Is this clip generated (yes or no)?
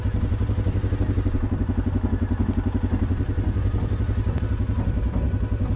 no